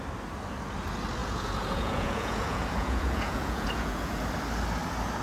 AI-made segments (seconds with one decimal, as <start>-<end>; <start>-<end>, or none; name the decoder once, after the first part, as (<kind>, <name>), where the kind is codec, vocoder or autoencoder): 1.2-4.3 (vocoder, Vocos)